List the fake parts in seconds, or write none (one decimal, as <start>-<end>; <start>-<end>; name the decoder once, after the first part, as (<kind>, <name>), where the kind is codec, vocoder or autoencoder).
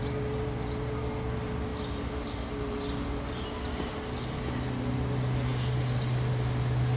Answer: none